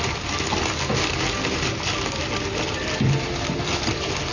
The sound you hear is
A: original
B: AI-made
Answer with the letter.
A